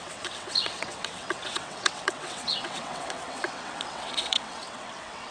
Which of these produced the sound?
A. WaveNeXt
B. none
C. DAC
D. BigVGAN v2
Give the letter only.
A